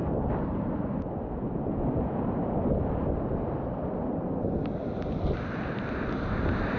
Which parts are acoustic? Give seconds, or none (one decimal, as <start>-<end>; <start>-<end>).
0.0-6.8